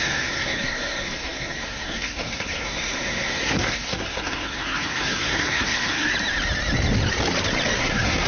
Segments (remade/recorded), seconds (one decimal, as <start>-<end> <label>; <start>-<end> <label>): 0.0-6.1 remade; 6.1-7.8 recorded; 7.8-8.3 remade